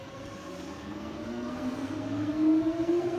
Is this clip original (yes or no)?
no